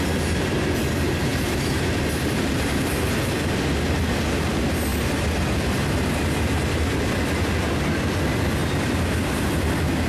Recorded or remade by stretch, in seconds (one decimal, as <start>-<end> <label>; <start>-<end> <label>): 0.0-1.3 recorded; 1.3-3.1 remade; 3.1-8.6 recorded; 8.6-9.5 remade; 9.5-10.1 recorded